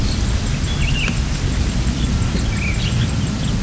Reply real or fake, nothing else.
real